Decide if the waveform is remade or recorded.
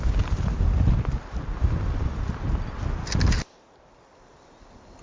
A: recorded